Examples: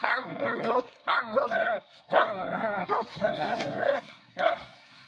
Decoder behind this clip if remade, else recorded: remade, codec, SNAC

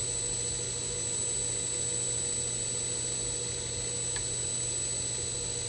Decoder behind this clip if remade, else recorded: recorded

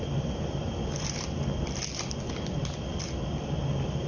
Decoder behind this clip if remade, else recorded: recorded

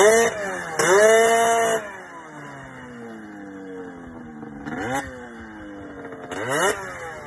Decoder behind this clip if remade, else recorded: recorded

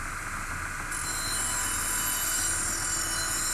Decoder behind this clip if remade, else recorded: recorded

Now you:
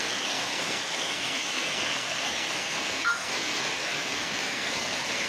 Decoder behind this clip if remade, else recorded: remade, codec, SNAC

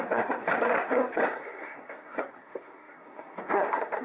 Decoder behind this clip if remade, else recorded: remade, codec, SNAC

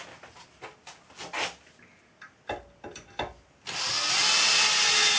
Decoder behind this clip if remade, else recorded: recorded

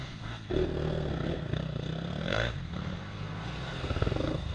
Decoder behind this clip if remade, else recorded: remade, codec, SNAC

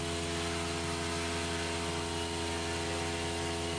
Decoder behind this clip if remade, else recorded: recorded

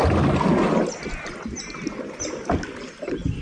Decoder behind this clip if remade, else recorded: recorded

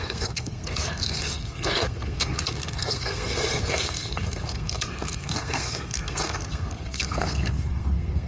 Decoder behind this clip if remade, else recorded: remade, codec, SNAC